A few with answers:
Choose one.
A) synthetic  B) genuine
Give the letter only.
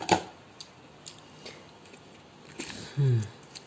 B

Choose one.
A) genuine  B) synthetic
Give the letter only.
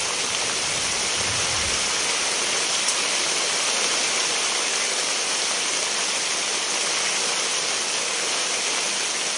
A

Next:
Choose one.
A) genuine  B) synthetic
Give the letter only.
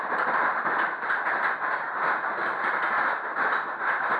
A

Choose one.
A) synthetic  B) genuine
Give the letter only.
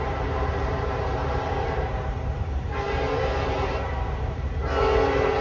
A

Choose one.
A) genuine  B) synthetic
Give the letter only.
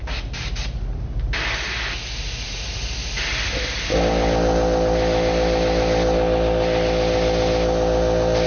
A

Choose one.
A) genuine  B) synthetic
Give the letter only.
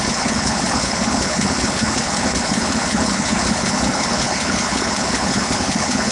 B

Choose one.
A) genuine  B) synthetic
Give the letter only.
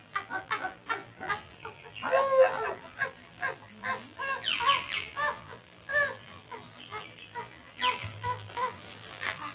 B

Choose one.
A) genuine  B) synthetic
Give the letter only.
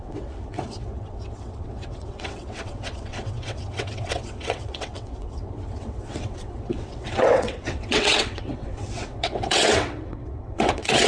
B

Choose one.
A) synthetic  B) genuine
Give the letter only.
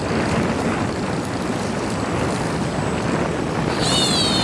B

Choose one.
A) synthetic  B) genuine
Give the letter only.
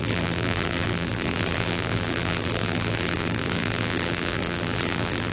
A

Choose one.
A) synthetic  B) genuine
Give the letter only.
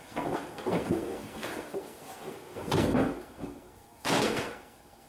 A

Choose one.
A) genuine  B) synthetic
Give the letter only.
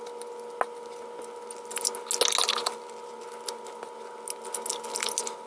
A